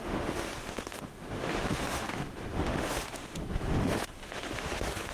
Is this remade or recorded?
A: remade